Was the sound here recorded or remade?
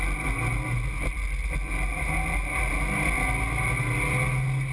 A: recorded